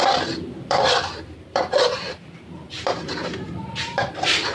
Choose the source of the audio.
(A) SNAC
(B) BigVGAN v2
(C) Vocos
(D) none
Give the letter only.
B